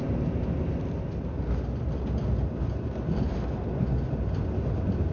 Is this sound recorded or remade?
recorded